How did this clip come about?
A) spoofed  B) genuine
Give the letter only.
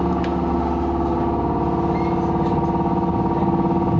B